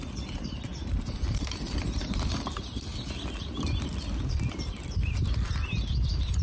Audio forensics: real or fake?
real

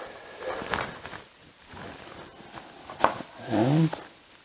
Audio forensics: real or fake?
fake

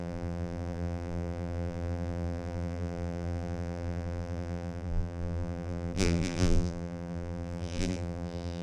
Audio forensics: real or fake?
fake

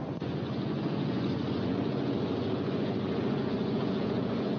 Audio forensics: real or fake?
fake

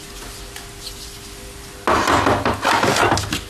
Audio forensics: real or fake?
real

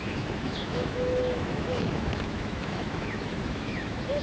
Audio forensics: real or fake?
fake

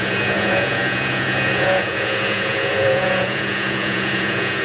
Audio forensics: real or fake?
fake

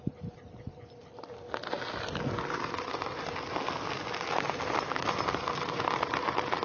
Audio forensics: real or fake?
real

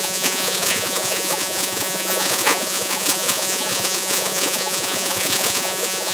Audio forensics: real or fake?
fake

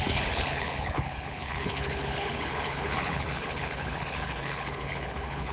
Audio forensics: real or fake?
fake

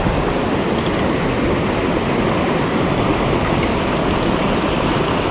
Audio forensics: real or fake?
real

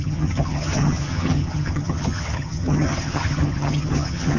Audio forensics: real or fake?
fake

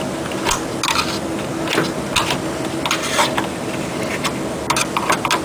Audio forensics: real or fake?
real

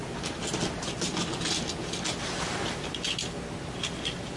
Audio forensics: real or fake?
real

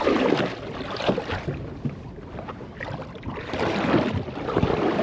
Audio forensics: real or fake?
real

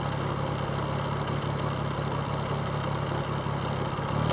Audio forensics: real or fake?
real